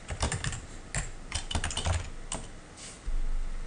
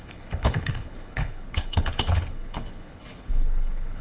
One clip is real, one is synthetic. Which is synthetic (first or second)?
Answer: second